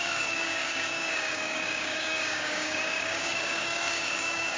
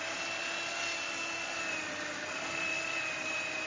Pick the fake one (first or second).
first